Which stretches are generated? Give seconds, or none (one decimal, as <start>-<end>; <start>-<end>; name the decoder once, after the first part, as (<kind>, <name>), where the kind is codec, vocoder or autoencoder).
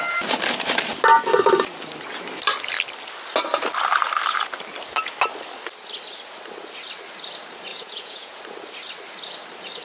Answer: 7.7-8.4 (vocoder, Vocos)